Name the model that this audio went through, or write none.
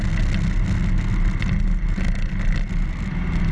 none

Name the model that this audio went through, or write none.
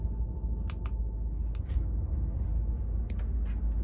none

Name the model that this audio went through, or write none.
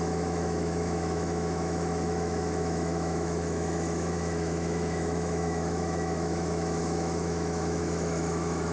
autoencoder, DAC-VAE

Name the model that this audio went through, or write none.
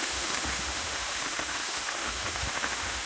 autoencoder, DAC-VAE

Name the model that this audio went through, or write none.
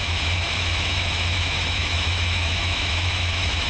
autoencoder, DAC-VAE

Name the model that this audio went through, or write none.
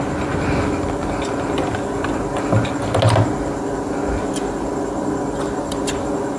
none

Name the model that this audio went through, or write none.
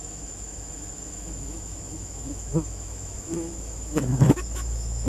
autoencoder, DAC-VAE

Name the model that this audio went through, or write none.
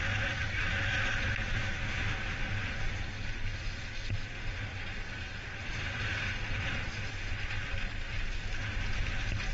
none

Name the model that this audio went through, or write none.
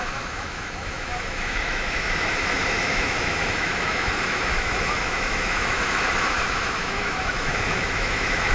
autoencoder, DAC-VAE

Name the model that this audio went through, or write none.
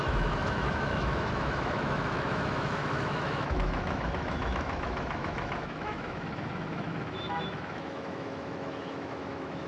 autoencoder, DAC-VAE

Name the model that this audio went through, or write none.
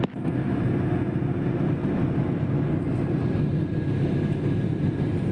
none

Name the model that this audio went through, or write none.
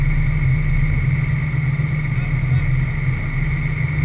none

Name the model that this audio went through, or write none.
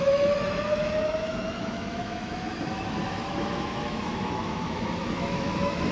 autoencoder, DAC-VAE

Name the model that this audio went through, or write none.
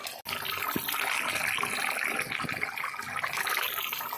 none